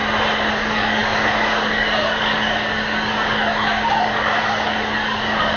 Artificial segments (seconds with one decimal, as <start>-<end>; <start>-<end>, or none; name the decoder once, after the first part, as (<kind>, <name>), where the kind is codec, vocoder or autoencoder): 0.5-5.6 (codec, DAC)